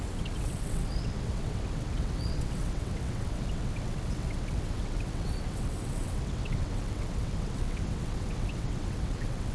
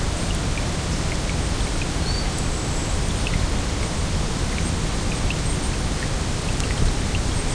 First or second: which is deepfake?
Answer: first